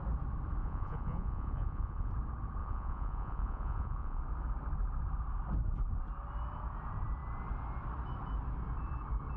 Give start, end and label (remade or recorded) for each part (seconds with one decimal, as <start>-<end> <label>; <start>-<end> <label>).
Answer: 0.0-0.6 recorded; 0.6-2.1 remade; 2.1-2.6 recorded; 2.6-4.2 remade; 4.2-9.4 recorded